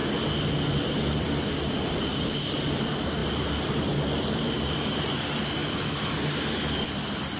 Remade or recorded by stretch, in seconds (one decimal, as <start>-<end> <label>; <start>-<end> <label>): 0.0-1.9 recorded; 1.9-5.6 remade; 5.6-7.4 recorded